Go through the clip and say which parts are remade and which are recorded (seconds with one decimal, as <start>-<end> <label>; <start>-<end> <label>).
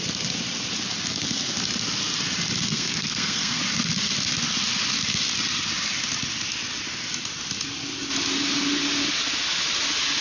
0.0-2.7 recorded; 2.7-3.6 remade; 3.6-10.2 recorded